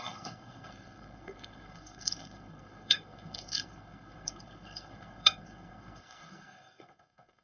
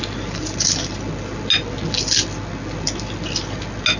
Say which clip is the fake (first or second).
first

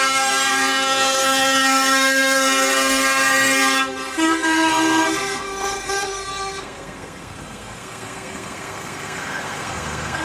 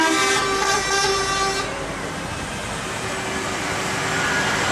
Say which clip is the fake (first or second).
first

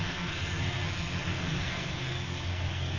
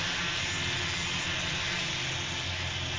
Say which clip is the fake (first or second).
first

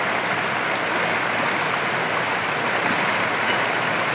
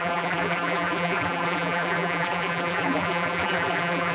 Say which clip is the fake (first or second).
second